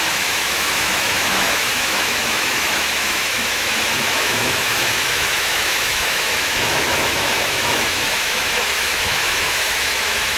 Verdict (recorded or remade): remade